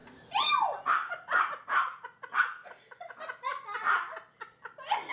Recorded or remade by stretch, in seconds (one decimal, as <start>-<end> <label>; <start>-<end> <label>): 0.0-0.8 recorded; 0.8-2.6 remade; 2.6-5.1 recorded